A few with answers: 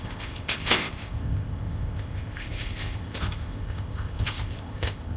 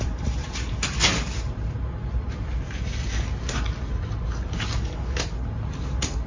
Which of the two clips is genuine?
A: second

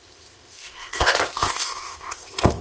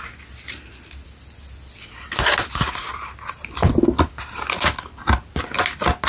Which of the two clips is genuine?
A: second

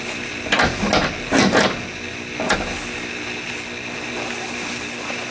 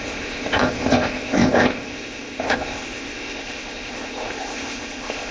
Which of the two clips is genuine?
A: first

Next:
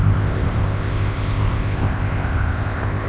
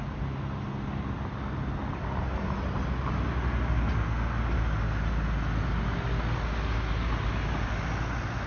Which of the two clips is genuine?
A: second